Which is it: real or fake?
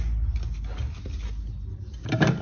real